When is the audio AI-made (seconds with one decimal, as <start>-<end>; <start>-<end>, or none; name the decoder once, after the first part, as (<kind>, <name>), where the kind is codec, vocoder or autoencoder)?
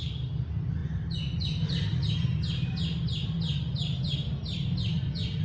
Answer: none